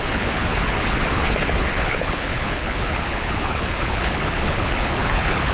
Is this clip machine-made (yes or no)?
yes